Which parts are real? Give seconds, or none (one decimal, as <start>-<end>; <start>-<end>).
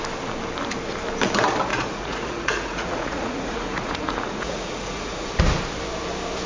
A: 0.0-1.7; 5.3-6.5